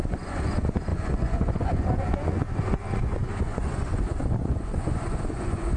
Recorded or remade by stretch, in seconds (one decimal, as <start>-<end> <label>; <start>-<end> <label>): 0.0-5.8 remade